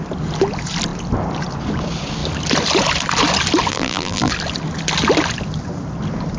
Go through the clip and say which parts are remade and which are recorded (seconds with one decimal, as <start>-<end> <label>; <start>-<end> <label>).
0.0-3.7 recorded; 3.7-4.3 remade; 4.3-6.4 recorded